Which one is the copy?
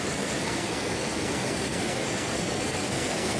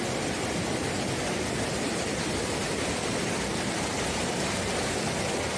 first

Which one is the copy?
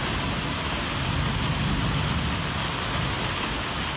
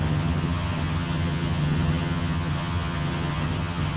second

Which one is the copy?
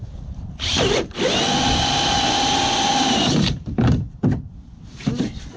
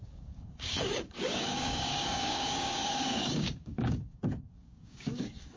second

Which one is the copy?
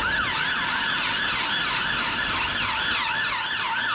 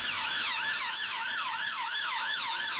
second